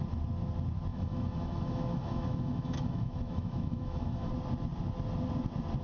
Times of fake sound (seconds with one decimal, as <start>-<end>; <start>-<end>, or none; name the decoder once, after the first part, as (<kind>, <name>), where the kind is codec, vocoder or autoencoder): 0.9-4.3 (autoencoder, DAC-VAE)